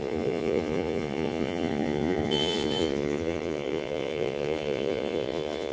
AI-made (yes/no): yes